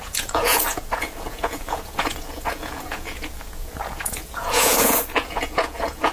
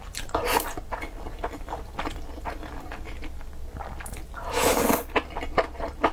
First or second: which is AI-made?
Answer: first